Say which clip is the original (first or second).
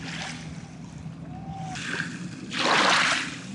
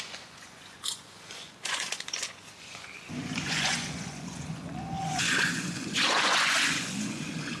first